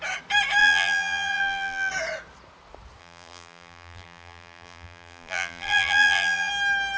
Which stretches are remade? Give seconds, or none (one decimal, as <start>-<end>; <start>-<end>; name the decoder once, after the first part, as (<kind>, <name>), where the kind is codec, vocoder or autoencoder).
0.6-1.9 (vocoder, BigVGAN v2); 3.0-6.5